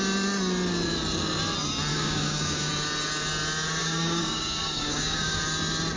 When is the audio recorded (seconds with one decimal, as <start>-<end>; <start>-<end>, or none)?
0.0-1.9; 2.7-3.8; 5.4-6.0